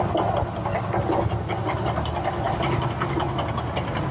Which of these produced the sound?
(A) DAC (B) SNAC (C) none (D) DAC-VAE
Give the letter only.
C